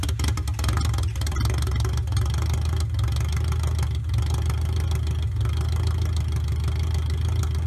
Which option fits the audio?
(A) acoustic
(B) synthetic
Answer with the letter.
A